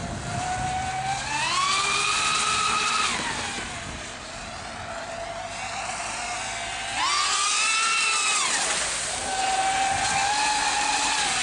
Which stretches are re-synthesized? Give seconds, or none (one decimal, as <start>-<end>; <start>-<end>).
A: none